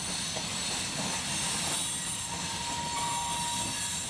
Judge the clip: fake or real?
real